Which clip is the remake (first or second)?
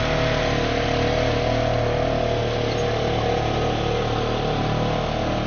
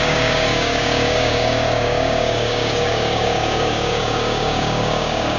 second